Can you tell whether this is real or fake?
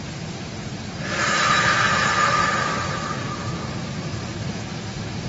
real